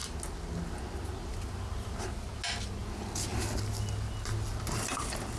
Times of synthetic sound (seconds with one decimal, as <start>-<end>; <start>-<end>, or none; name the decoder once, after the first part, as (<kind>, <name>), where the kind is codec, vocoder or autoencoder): none